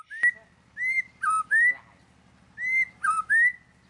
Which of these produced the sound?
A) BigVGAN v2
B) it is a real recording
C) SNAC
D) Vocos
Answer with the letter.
B